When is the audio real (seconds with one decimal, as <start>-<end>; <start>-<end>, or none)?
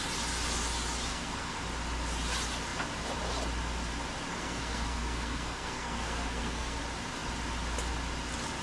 0.0-1.1; 1.6-4.3; 6.8-8.6